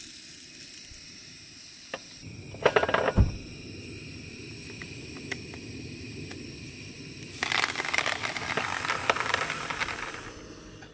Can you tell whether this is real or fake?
real